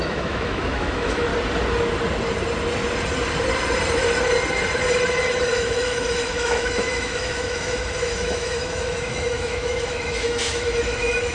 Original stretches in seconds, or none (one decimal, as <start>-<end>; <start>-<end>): 1.3-5.5